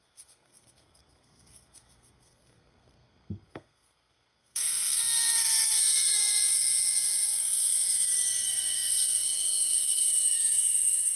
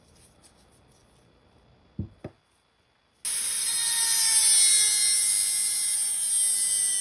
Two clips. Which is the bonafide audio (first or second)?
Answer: second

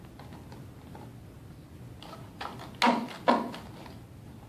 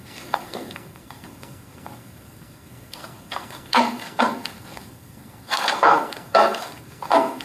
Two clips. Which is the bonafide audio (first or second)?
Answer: first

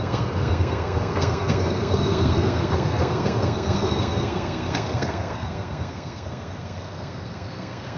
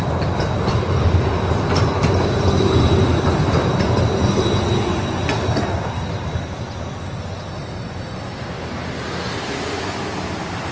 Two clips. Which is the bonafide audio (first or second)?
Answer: second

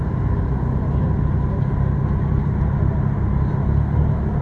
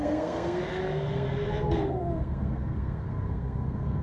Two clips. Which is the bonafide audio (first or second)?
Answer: first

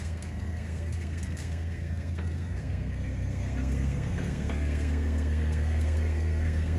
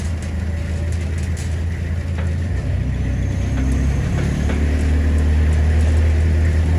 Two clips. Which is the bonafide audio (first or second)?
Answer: second